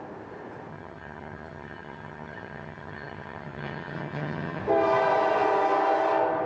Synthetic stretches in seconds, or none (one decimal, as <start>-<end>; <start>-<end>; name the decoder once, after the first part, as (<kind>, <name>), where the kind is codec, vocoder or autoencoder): 0.7-4.6 (vocoder, HiFi-GAN)